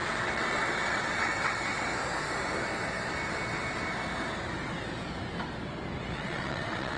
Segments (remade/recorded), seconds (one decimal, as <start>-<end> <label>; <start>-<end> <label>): 0.0-1.9 remade; 1.9-6.1 recorded; 6.1-7.0 remade